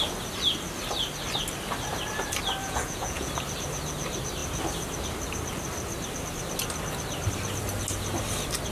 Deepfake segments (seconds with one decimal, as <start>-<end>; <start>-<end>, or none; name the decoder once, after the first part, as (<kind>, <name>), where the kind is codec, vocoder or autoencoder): 2.6-3.3 (vocoder, Vocos)

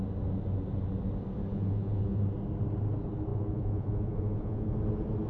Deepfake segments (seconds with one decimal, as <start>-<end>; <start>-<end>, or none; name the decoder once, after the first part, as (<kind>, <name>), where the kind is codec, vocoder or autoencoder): 1.5-2.2 (vocoder, Vocos); 3.3-4.7

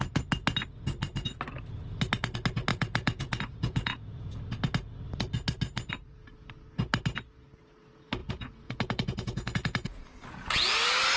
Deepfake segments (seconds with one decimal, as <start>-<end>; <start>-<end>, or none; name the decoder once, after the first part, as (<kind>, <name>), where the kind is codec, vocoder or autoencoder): 2.7-4.4 (vocoder, Vocos); 8.2-10.0

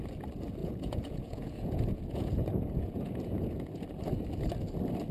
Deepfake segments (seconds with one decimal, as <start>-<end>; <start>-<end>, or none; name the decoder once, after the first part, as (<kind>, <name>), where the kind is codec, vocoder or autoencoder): 0.6-3.7 (vocoder, Vocos)